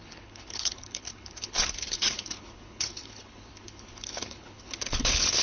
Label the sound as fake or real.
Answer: fake